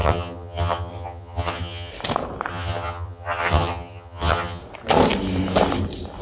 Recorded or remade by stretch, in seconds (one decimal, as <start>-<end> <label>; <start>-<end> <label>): 0.0-1.9 remade; 1.9-2.5 recorded; 2.5-4.6 remade; 4.6-6.2 recorded